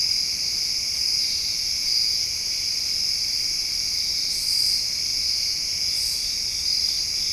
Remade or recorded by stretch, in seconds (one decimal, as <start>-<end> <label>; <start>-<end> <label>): 0.0-1.3 recorded; 1.3-2.5 remade; 2.5-5.1 recorded; 5.1-6.1 remade; 6.1-7.3 recorded